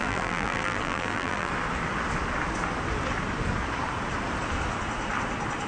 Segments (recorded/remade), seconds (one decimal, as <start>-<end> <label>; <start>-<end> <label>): 0.0-1.5 remade; 1.5-5.7 recorded